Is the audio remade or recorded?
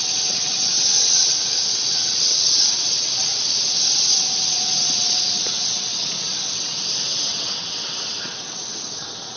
remade